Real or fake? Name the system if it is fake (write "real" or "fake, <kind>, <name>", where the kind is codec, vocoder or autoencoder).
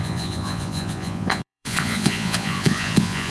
fake, vocoder, Vocos